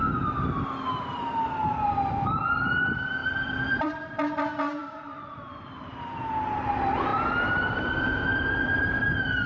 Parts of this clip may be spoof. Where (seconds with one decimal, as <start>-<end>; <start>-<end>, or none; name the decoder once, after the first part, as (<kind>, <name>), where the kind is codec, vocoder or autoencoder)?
3.2-4.1 (vocoder, BigVGAN v2); 4.8-6.0; 7.1-7.9; 8.3-9.1